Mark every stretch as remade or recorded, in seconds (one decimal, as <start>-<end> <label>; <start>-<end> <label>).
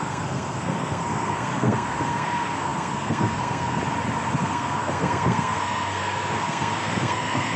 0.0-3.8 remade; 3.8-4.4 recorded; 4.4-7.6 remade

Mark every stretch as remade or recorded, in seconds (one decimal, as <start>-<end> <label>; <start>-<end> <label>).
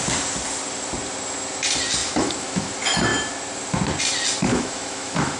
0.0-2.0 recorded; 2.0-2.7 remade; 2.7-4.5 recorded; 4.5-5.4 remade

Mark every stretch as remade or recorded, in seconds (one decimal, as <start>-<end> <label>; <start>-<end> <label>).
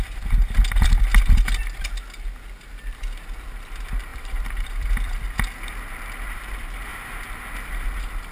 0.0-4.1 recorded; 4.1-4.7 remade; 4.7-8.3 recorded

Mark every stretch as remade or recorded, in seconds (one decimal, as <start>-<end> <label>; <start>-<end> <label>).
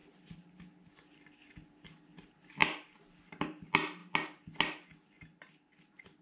0.0-6.2 recorded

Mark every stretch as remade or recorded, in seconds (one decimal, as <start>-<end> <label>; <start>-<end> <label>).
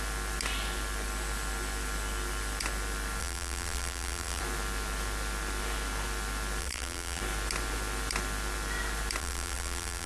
0.0-3.2 recorded; 3.2-4.4 remade; 4.4-6.6 recorded; 6.6-7.2 remade; 7.2-9.2 recorded; 9.2-10.1 remade